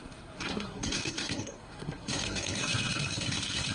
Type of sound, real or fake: fake